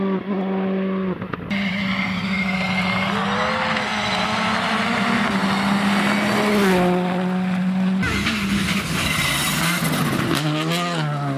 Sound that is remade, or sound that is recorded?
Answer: recorded